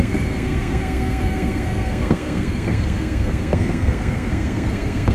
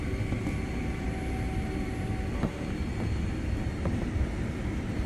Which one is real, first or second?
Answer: second